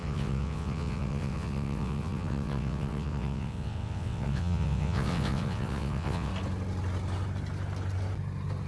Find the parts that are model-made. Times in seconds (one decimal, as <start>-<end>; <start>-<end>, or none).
0.0-6.3